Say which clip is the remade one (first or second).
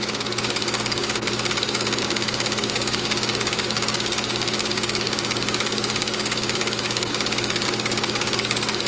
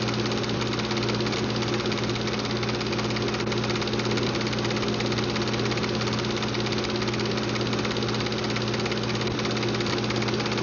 first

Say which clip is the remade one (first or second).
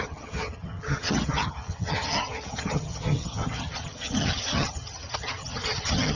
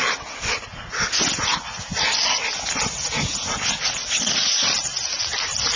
first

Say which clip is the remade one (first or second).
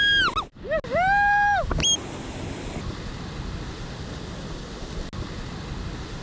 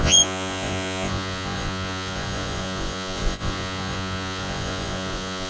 second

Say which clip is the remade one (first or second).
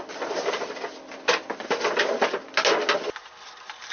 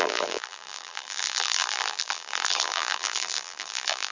second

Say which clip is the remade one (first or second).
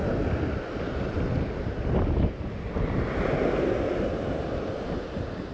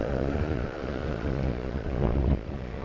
second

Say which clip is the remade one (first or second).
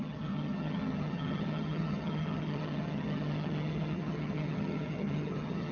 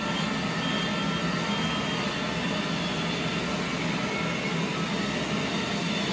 first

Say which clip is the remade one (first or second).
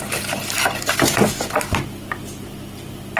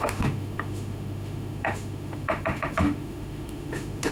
second